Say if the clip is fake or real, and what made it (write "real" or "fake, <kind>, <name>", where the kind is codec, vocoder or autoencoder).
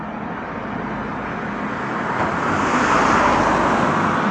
real